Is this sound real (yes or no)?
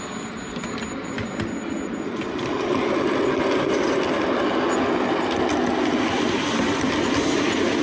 yes